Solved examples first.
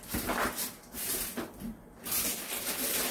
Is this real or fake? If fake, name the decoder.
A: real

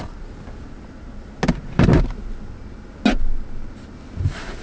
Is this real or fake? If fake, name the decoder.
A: real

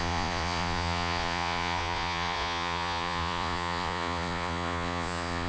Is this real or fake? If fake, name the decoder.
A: fake, vocoder, Vocos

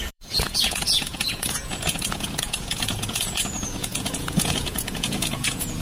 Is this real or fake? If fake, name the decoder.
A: fake, vocoder, Vocos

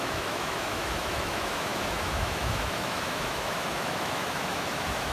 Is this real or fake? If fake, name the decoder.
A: fake, autoencoder, DAC-VAE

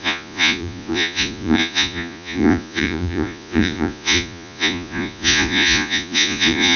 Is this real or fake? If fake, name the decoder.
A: fake, vocoder, Vocos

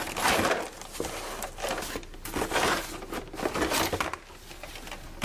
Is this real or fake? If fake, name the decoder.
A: real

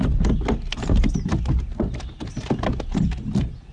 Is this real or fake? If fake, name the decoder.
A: real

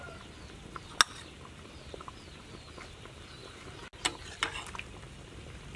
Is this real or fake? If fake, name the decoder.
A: real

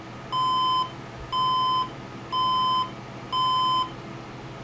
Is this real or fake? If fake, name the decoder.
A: real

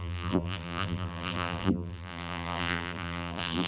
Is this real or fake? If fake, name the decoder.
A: fake, vocoder, BigVGAN v2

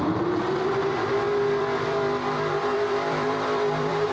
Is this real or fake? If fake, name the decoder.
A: fake, vocoder, BigVGAN v2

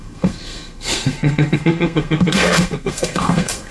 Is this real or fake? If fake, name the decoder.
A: fake, codec, SNAC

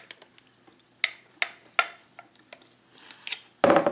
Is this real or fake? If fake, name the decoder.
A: real